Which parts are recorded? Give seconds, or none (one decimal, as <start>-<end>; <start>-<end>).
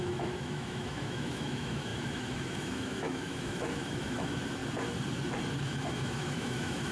4.6-5.6